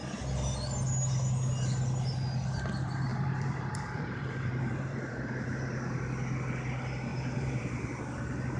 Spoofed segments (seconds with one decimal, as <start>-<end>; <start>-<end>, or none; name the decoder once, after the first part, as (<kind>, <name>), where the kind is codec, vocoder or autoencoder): 3.1-6.0 (vocoder, BigVGAN v2); 7.1-8.0